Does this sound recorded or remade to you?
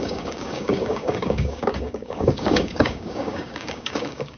remade